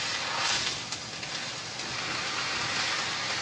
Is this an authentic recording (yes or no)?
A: yes